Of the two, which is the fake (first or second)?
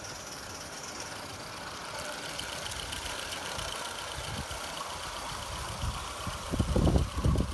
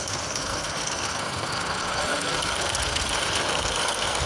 second